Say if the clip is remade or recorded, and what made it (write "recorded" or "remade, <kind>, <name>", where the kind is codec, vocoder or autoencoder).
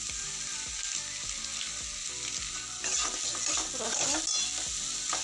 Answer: recorded